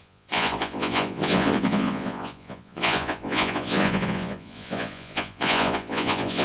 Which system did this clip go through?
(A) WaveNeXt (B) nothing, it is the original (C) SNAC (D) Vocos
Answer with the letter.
D